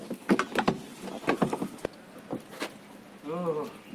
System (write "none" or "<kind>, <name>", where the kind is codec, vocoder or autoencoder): none